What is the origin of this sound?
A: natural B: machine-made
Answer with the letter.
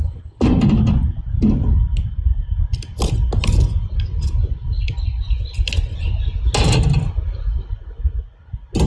A